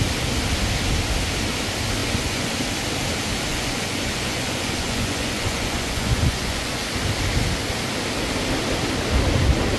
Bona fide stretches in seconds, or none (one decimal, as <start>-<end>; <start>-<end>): 0.0-2.0; 2.5-3.5; 6.9-9.8